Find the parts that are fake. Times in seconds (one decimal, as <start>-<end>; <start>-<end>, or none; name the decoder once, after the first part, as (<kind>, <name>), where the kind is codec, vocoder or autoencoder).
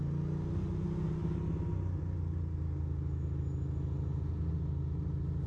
none